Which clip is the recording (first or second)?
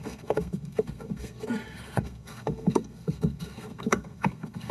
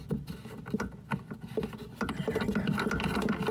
second